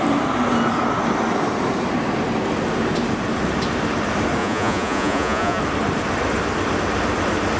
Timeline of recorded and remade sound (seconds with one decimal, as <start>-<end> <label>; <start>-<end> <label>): 0.0-4.4 recorded; 4.4-5.6 remade; 5.6-7.6 recorded

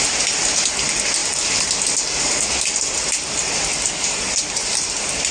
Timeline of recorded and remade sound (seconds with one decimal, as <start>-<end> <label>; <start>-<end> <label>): 0.0-5.3 recorded

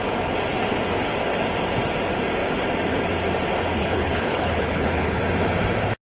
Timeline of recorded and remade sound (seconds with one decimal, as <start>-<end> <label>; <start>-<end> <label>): 0.0-3.8 recorded; 3.8-5.2 remade; 5.2-6.1 recorded

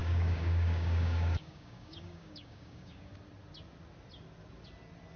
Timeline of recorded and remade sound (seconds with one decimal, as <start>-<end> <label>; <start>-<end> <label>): 0.0-3.1 remade; 3.1-5.2 recorded

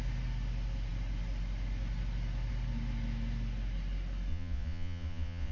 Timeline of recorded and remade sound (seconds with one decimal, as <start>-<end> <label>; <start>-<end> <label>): 0.0-4.3 recorded; 4.3-5.5 remade

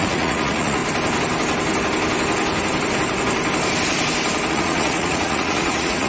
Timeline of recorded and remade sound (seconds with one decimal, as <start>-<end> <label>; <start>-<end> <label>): 0.0-0.8 remade; 0.8-4.5 recorded; 4.5-6.1 remade

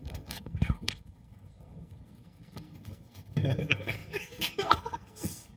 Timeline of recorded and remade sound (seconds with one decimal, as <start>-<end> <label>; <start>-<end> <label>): 0.0-5.6 remade